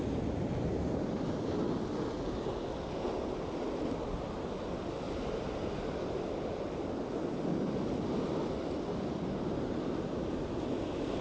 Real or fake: real